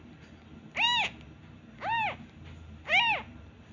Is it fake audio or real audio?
real